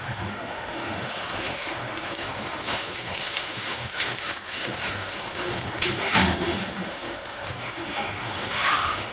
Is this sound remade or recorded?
remade